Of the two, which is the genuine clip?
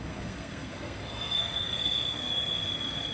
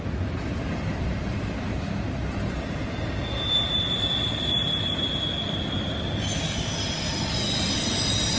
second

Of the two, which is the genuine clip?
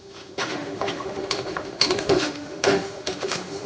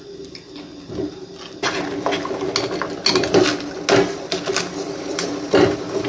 second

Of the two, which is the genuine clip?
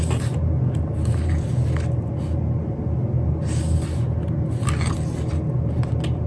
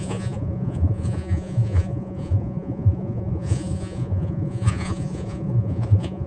first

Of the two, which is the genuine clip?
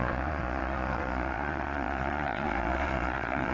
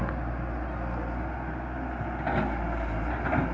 second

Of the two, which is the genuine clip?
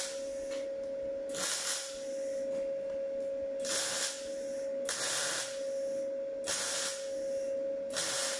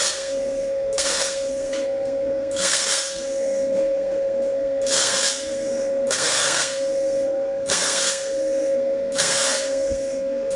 first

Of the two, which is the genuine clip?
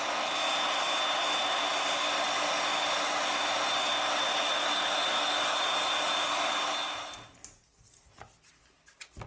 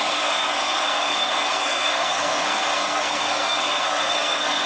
first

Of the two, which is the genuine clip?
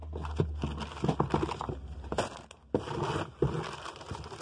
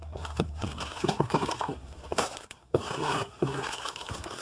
first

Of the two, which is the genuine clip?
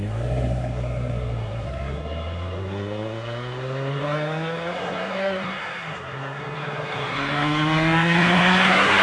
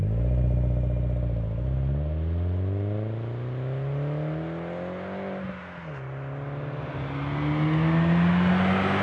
second